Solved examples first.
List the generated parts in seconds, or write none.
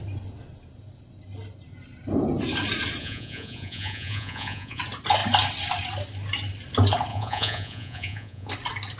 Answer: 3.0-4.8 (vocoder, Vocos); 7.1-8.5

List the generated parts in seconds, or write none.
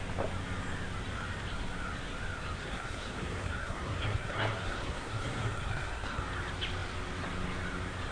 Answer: 2.6-6.2 (codec, SNAC)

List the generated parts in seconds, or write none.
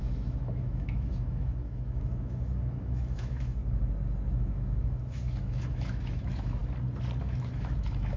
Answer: 0.0-3.6 (autoencoder, DAC-VAE); 4.3-6.6; 7.2-8.2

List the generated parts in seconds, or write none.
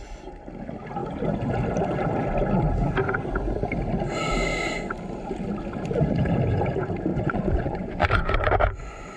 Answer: 7.1-9.2 (vocoder, Vocos)